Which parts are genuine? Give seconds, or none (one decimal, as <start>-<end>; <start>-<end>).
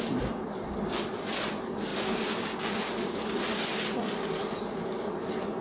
0.0-5.6